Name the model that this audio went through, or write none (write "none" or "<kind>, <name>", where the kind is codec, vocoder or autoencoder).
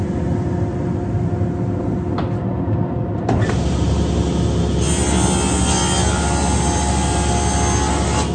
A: none